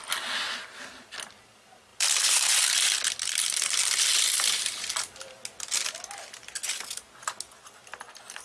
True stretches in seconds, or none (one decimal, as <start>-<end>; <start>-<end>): 0.0-1.9; 2.9-8.4

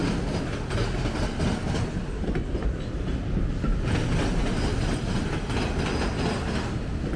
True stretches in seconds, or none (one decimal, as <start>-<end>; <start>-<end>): 0.0-7.2

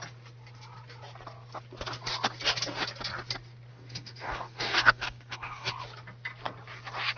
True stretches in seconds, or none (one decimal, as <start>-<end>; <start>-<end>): 0.0-3.7; 5.7-7.2

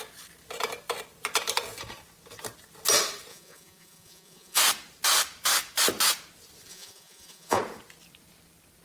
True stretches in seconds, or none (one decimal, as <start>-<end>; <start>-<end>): 0.0-3.3; 4.6-6.7; 7.6-8.8

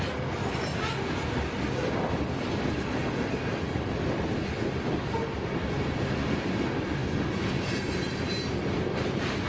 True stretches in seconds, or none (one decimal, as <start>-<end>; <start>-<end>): 0.0-9.5

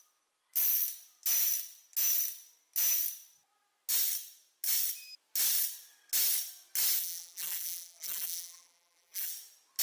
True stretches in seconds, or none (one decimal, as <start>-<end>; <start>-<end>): 0.0-7.0; 9.3-9.8

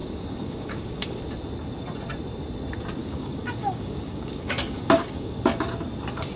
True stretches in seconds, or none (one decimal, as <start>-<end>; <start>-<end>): 1.2-3.0; 5.4-6.4